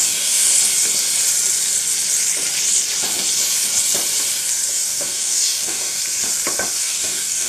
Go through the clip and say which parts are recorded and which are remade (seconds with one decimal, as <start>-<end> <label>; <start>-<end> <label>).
0.0-0.5 remade; 0.5-4.7 recorded; 4.7-6.0 remade; 6.0-6.8 recorded; 6.8-7.5 remade

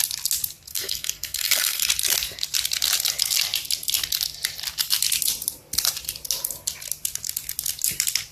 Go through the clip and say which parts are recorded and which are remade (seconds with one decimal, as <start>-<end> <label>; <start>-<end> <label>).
0.0-0.7 recorded; 0.7-1.9 remade; 1.9-8.3 recorded